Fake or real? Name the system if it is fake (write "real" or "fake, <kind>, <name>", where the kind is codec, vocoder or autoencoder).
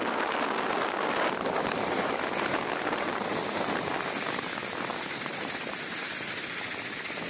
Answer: real